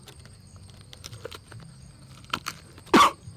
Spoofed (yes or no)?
no